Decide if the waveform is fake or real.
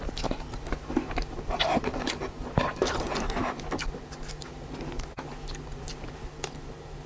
real